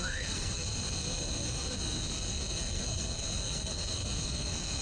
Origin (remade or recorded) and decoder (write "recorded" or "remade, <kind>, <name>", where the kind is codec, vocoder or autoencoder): remade, codec, SNAC